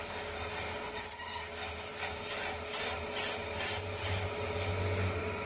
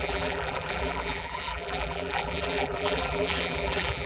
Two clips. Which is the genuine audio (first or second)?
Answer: first